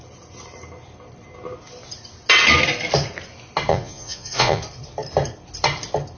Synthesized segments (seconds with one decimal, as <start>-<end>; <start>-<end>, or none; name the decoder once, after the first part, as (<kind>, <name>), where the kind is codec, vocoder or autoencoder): 3.7-4.6 (vocoder, Vocos)